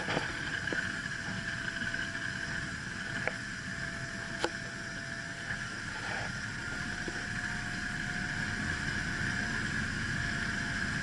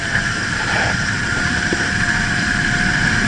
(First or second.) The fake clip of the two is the second